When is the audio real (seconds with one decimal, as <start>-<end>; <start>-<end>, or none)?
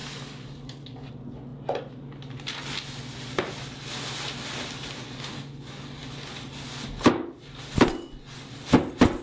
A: 1.1-9.2